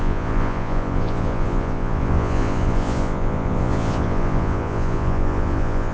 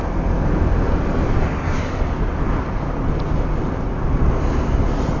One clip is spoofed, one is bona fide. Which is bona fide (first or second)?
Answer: second